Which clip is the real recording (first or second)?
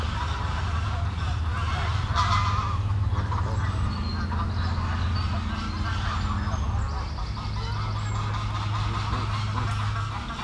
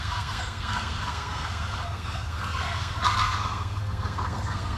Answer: first